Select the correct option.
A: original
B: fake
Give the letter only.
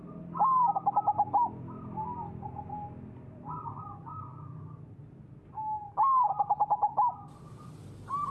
A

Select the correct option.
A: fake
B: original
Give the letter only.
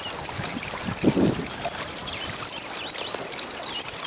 B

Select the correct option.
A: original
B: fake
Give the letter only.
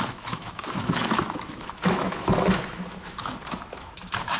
B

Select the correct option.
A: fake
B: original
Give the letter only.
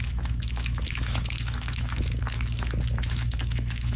A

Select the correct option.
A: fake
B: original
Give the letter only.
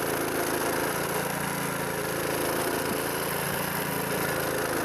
B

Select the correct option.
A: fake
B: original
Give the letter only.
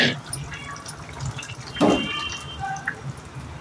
B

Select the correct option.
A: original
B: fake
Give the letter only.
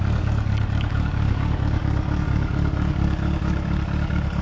B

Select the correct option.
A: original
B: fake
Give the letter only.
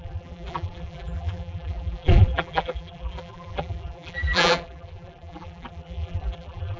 B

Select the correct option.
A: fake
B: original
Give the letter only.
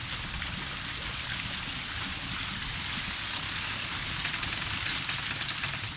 B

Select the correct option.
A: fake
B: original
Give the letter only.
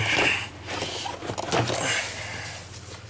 B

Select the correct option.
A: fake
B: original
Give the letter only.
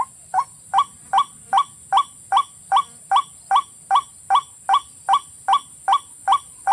B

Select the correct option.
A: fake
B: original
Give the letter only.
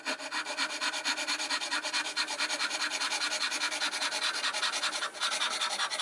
B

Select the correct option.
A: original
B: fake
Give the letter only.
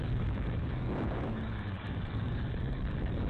B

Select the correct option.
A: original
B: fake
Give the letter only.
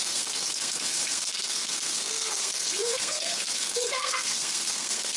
B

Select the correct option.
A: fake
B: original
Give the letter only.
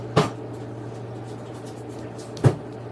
B